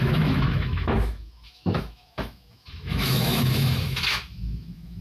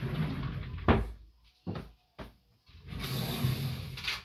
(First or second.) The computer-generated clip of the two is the first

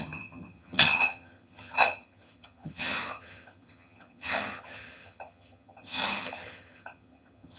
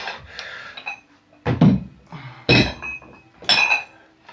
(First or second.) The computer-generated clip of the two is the first